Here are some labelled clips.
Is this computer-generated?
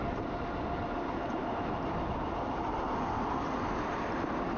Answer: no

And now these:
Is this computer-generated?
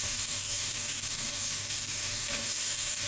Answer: yes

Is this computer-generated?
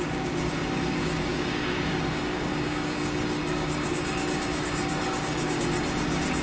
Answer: yes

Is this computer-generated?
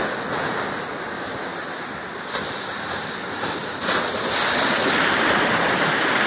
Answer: no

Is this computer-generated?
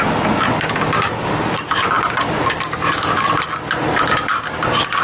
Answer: no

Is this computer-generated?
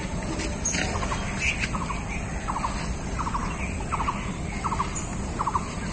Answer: no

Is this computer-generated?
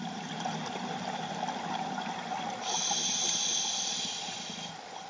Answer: no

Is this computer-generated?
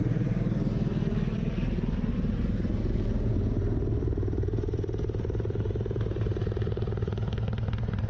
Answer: no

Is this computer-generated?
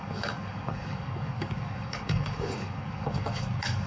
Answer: yes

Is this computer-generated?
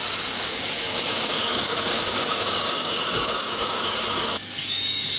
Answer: yes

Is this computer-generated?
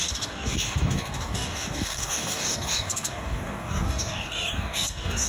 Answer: yes